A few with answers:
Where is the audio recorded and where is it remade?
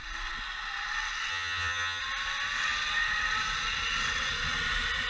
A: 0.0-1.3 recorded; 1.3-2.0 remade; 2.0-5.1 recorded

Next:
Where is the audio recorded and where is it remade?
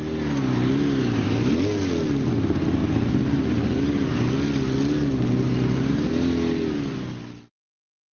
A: 0.0-8.1 recorded